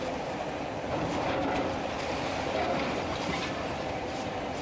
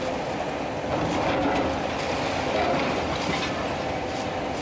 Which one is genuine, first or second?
second